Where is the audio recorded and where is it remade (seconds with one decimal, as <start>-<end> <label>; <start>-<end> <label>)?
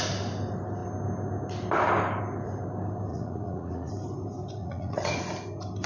0.0-3.1 recorded; 3.1-3.9 remade; 3.9-4.6 recorded; 4.6-5.2 remade; 5.2-5.9 recorded